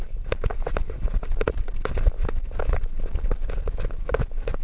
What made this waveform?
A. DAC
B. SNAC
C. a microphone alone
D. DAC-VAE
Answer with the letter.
C